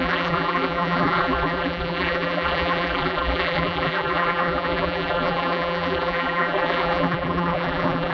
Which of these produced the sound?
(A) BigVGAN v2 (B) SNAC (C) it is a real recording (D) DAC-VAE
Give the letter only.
A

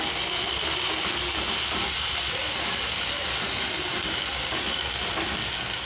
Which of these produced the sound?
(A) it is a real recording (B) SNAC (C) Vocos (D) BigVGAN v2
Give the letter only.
A